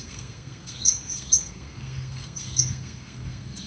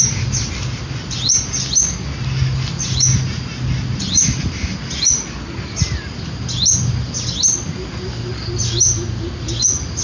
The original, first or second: second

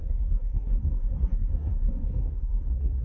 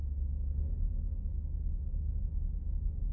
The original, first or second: second